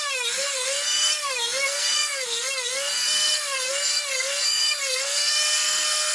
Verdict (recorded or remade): remade